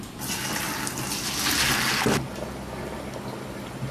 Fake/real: real